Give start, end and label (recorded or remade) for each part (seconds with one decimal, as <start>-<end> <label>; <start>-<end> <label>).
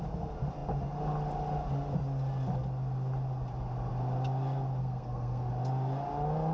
0.0-4.8 recorded; 4.8-5.5 remade; 5.5-6.5 recorded